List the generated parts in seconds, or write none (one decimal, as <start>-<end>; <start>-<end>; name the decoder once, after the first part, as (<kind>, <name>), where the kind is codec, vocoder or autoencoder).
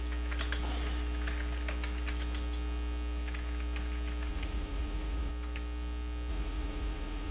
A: 4.3-5.3 (vocoder, Vocos); 6.3-7.3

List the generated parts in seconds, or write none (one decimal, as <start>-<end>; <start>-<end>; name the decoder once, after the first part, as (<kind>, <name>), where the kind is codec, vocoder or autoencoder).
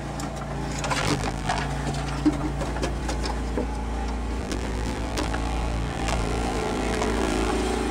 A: 1.0-1.6 (vocoder, BigVGAN v2); 4.4-7.5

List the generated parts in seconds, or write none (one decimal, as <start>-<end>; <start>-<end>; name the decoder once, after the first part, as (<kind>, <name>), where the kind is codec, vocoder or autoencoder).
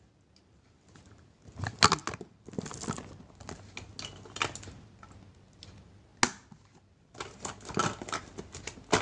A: none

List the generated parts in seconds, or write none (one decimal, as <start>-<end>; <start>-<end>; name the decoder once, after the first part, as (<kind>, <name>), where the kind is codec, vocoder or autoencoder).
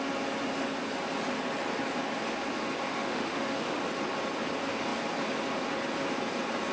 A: 2.9-3.8 (autoencoder, DAC-VAE)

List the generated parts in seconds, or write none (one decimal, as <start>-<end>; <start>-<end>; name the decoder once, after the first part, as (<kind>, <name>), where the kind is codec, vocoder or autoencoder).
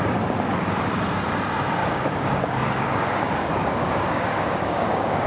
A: 1.8-5.3 (codec, DAC)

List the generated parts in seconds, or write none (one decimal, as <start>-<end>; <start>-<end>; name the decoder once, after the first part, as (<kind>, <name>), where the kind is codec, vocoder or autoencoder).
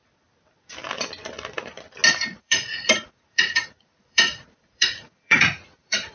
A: 2.3-6.1 (vocoder, Vocos)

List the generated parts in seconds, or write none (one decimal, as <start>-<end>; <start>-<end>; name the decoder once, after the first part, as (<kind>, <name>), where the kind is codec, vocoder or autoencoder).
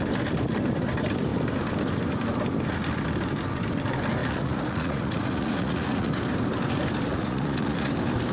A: 4.2-6.1 (vocoder, Vocos); 7.1-7.9